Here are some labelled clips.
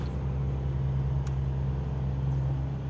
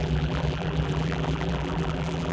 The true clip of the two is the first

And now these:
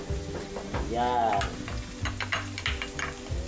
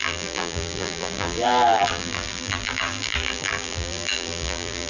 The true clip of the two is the first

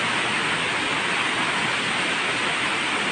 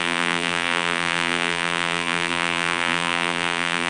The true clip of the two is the first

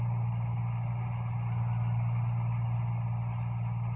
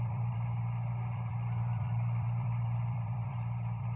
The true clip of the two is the first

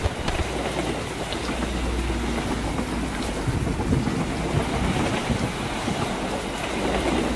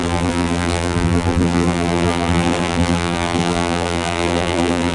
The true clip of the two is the first